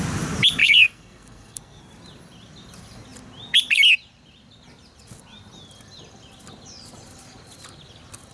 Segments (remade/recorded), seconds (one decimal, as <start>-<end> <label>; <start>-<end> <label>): 0.0-0.6 recorded; 0.6-1.8 remade; 1.8-8.3 recorded